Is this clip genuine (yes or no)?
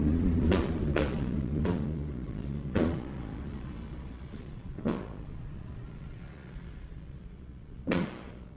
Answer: no